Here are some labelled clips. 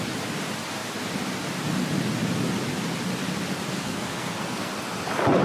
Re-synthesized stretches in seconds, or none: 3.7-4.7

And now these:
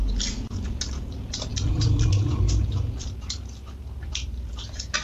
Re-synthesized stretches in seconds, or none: none

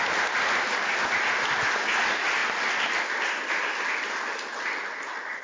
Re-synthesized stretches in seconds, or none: none

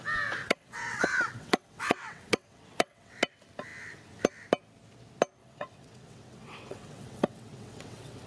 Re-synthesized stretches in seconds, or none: 0.4-3.2; 5.4-8.3